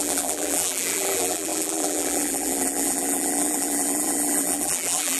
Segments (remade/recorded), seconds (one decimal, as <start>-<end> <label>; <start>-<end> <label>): 0.0-5.2 remade